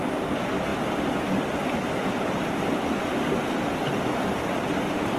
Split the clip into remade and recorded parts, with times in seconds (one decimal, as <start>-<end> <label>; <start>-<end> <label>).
0.0-5.2 recorded